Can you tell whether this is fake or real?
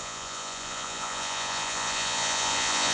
fake